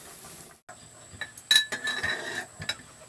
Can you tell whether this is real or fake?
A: real